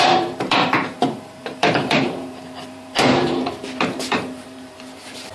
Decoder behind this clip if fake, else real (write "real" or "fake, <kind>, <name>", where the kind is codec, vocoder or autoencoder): fake, vocoder, BigVGAN v2